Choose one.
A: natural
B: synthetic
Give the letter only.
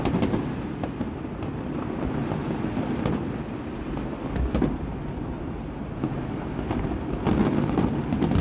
A